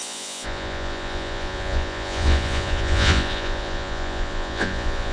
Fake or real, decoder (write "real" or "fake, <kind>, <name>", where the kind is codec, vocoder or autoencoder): fake, vocoder, Vocos